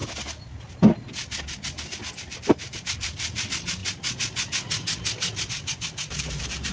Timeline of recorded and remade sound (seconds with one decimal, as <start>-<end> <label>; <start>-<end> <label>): 0.0-2.4 recorded; 2.4-3.8 remade; 3.8-5.5 recorded; 5.5-6.7 remade